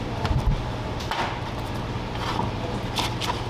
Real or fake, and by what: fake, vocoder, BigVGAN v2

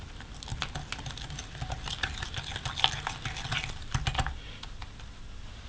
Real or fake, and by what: real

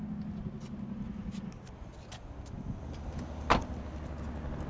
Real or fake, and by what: real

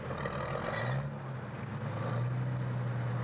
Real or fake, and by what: real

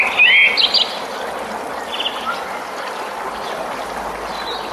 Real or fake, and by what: real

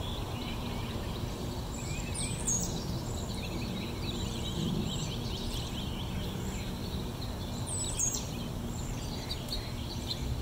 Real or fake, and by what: fake, vocoder, BigVGAN v2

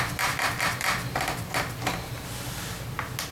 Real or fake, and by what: real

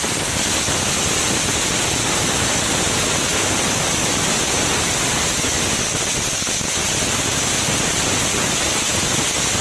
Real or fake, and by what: real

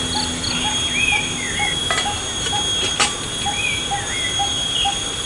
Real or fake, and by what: real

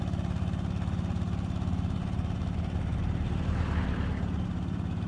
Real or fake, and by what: fake, vocoder, BigVGAN v2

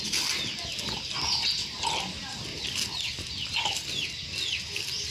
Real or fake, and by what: real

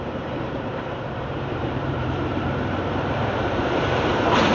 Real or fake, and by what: fake, vocoder, BigVGAN v2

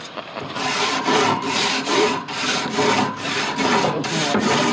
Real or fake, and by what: fake, vocoder, BigVGAN v2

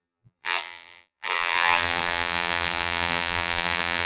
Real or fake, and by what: fake, vocoder, BigVGAN v2